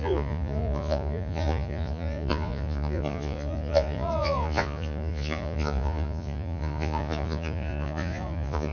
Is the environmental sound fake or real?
fake